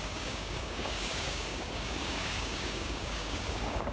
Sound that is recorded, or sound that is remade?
remade